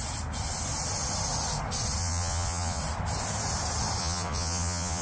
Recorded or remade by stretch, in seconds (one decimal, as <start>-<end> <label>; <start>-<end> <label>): 0.0-2.0 recorded; 2.0-2.8 remade; 2.8-4.0 recorded; 4.0-5.0 remade